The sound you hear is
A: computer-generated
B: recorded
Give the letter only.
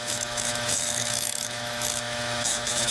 A